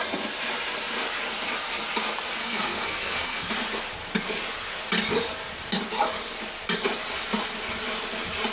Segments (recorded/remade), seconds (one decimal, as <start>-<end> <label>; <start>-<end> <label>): 0.0-2.4 recorded; 2.4-3.5 remade; 3.5-8.5 recorded